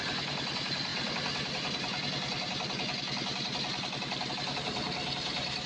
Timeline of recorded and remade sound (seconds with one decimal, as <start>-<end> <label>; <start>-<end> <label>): 0.0-5.7 recorded